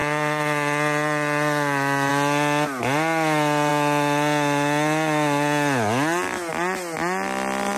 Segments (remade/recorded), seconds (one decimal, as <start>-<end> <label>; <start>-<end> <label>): 0.0-2.1 remade; 2.1-7.8 recorded